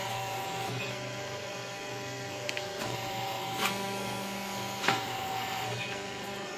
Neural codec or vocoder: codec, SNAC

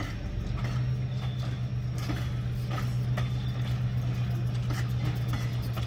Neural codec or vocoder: none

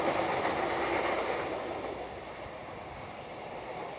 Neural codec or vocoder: none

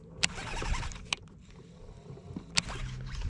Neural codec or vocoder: none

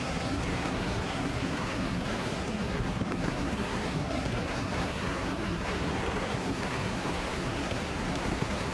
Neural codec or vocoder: codec, SNAC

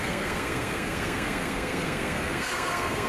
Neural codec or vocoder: codec, SNAC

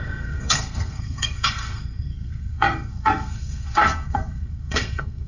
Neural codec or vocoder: codec, SNAC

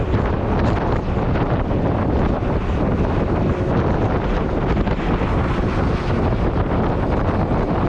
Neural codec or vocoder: none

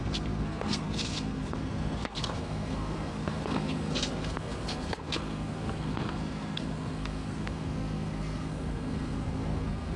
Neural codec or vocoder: codec, SNAC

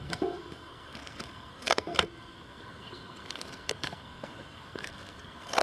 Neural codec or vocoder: codec, SNAC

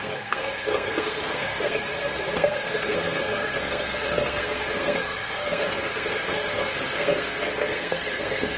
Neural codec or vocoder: codec, SNAC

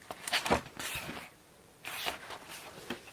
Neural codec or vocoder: none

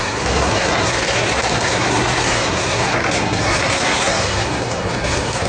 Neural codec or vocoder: codec, SNAC